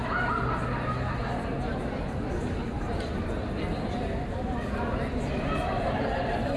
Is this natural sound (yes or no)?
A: yes